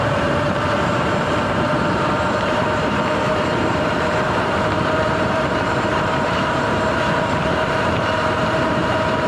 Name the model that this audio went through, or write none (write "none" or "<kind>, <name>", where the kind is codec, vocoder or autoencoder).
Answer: vocoder, BigVGAN v2